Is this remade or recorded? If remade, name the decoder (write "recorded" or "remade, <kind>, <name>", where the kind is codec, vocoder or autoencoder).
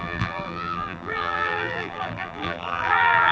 remade, vocoder, BigVGAN v2